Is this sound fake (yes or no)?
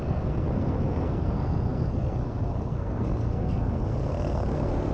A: yes